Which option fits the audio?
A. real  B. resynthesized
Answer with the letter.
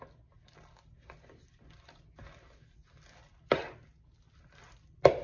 A